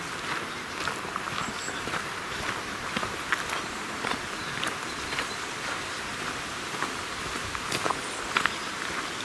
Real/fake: fake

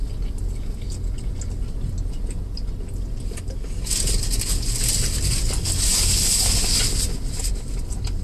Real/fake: real